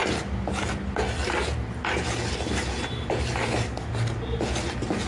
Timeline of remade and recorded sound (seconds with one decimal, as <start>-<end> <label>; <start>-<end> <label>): 0.0-5.1 recorded